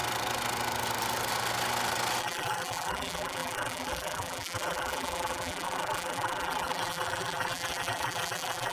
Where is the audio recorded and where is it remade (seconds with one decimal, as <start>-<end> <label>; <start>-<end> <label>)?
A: 0.0-2.2 recorded; 2.2-8.7 remade